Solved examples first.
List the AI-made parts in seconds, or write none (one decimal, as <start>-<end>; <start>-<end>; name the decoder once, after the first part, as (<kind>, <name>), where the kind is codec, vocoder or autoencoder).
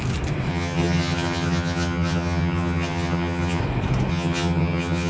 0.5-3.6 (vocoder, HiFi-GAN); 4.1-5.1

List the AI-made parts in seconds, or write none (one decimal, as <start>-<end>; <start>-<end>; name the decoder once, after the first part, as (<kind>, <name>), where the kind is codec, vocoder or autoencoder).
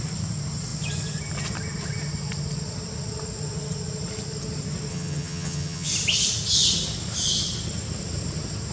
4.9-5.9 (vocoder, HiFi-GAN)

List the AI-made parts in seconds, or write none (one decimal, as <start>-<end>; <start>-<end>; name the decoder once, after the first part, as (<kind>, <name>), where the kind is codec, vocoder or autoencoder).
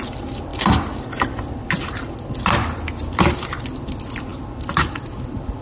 none